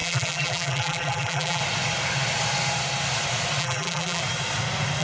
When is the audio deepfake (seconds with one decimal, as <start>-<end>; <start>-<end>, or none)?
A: 0.0-1.6; 3.6-4.2